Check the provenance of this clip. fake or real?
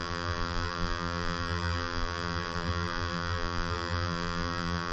fake